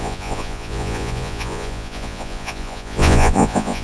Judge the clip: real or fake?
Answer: fake